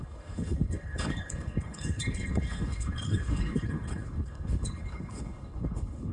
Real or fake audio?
fake